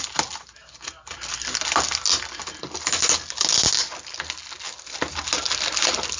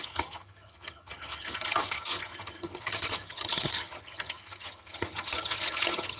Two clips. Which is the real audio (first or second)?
first